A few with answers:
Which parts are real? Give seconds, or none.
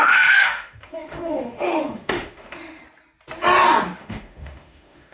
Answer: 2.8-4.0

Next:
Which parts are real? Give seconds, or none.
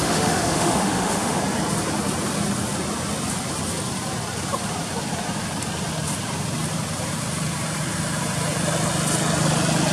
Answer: 1.4-9.9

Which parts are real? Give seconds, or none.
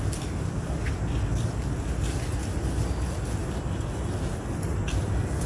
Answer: 0.0-5.5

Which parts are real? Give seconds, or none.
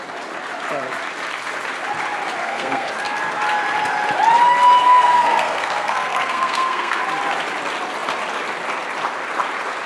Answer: 0.0-2.4; 2.9-4.8; 7.0-9.9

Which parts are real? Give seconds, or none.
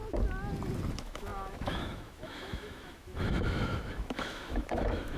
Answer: 0.0-0.9